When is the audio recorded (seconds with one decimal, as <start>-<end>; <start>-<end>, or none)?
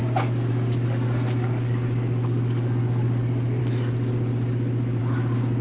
0.0-0.5; 3.6-5.0